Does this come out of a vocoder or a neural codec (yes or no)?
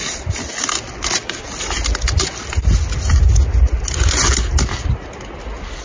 no